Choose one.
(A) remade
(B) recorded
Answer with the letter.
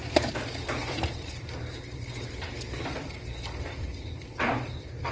A